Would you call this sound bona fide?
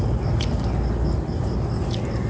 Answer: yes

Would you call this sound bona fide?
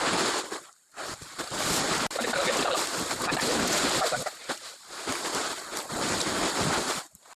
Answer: yes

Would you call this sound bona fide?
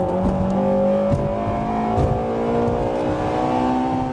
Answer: yes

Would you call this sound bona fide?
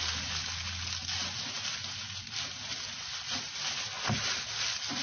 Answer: yes